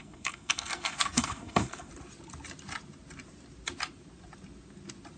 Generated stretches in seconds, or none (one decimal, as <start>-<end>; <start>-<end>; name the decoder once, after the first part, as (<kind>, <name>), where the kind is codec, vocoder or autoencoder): 0.0-1.9 (codec, SNAC)